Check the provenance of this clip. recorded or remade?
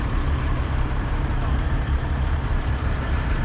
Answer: remade